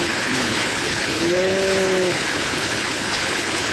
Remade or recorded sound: remade